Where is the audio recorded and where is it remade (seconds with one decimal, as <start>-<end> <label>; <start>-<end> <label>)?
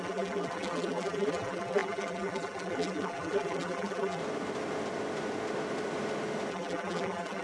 0.0-4.2 remade; 4.2-6.5 recorded; 6.5-7.4 remade